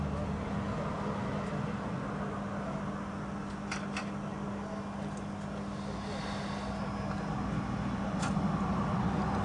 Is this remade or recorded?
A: recorded